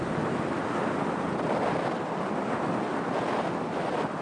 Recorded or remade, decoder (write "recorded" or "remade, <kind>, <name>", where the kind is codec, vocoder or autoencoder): recorded